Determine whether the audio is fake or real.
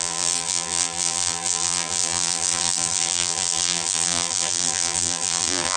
fake